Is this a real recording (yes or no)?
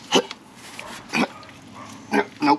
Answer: yes